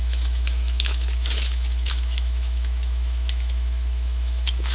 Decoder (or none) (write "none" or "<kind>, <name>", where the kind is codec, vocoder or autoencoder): autoencoder, DAC-VAE